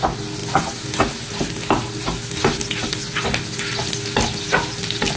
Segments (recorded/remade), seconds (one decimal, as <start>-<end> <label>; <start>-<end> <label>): 0.0-5.2 recorded